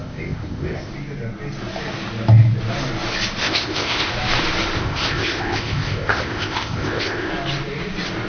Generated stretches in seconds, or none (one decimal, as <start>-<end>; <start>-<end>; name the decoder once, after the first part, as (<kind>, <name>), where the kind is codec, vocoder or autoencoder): 0.0-0.9 (codec, ZipCodec); 3.4-4.1; 4.8-7.3